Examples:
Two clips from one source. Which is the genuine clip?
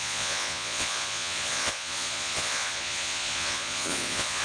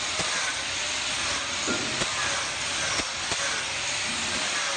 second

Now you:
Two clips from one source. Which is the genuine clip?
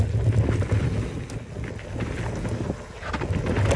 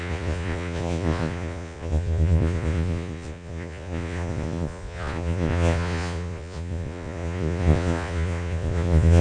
first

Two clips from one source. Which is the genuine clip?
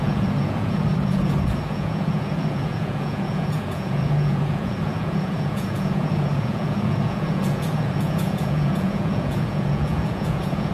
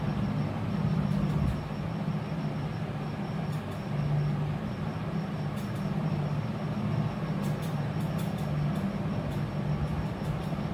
second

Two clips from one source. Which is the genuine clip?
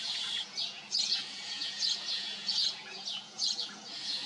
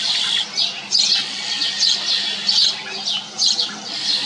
second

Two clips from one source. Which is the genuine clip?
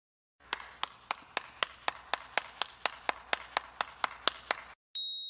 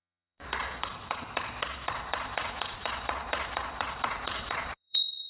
first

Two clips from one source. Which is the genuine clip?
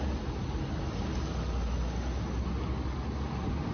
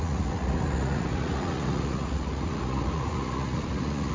first